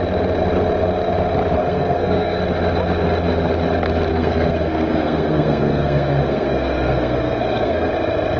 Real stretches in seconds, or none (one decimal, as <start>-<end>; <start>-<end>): 0.0-1.6; 2.4-4.1; 7.9-8.4